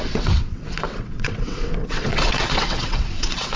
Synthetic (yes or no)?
yes